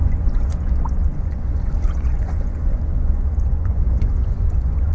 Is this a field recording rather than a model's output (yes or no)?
no